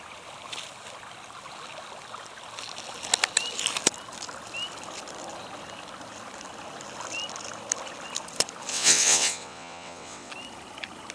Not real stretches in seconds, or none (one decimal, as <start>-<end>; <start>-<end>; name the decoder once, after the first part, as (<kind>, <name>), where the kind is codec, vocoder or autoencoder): 8.7-10.3 (vocoder, WaveNeXt)